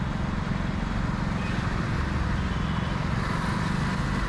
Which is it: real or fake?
real